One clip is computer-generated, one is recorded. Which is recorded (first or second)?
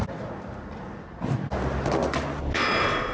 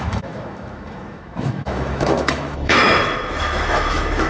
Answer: first